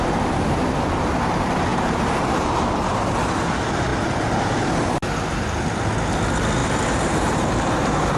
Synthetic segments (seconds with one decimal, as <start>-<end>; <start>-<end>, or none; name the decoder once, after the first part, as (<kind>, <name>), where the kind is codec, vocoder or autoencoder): 1.7-2.6 (vocoder, BigVGAN v2); 6.6-7.5